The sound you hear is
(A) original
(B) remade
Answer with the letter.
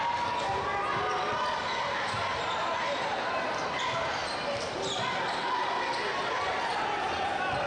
A